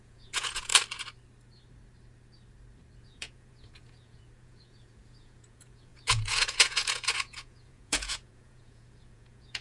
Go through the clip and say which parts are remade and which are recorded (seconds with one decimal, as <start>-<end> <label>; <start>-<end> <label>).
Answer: 0.0-0.7 remade; 0.7-3.0 recorded; 3.0-9.6 remade